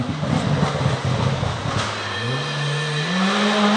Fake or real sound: real